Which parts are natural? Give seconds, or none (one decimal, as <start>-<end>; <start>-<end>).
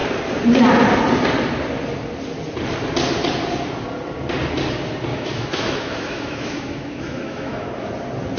0.0-5.1; 7.9-8.4